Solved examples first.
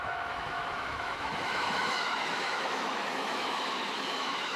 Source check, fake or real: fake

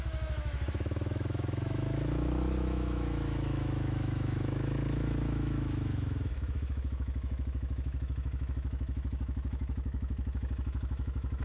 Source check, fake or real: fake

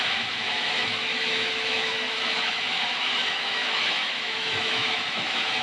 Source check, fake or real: fake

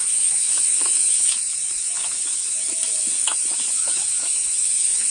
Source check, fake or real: fake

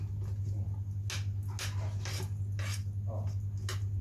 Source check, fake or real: real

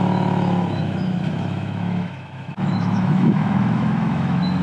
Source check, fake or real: fake